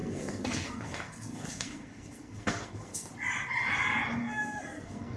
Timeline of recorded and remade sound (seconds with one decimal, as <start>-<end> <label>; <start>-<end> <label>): 0.0-3.1 remade; 3.1-4.2 recorded; 4.2-5.2 remade